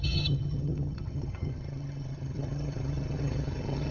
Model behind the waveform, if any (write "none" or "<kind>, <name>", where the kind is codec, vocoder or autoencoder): vocoder, HiFi-GAN